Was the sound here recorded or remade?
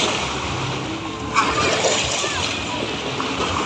recorded